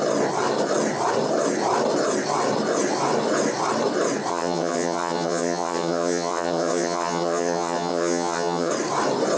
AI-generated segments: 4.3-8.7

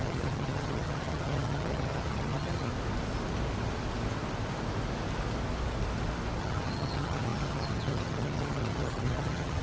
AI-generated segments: 0.0-2.7; 6.4-9.6

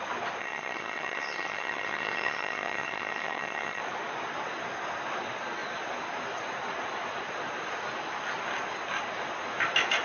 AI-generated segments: 0.4-3.8